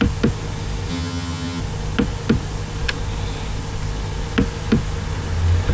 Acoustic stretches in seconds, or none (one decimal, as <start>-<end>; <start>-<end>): 0.0-0.9; 1.6-5.7